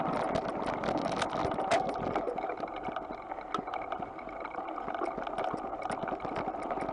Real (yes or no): yes